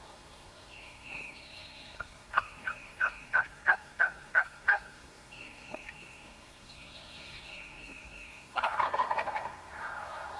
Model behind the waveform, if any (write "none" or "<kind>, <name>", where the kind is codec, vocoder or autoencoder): codec, SNAC